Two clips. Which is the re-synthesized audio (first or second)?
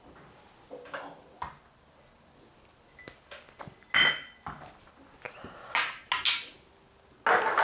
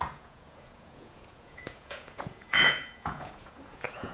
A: second